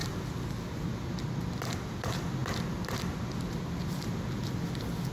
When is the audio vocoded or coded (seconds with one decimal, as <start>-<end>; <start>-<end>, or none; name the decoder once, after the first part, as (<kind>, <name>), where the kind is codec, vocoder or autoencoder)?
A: 2.0-2.4 (vocoder, BigVGAN v2)